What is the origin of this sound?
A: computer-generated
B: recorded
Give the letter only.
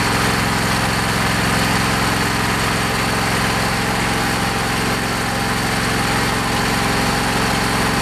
B